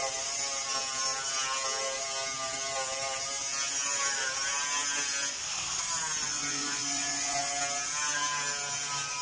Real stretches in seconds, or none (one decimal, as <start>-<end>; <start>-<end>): 0.0-6.2; 7.5-9.2